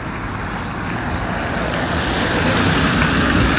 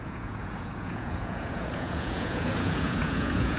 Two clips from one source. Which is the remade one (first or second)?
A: second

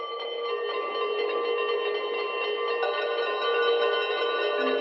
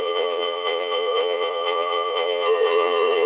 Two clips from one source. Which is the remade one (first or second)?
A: second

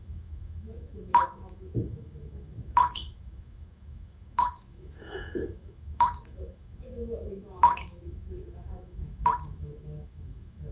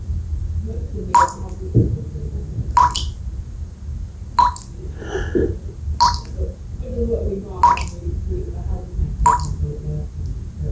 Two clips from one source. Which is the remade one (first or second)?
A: first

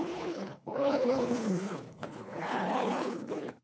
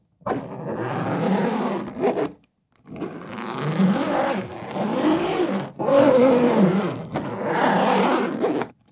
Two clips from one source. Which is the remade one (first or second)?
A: first